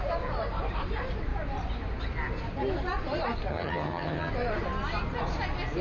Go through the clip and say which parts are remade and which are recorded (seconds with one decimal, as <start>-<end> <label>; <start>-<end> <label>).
0.0-3.5 recorded; 3.5-4.3 remade; 4.3-5.8 recorded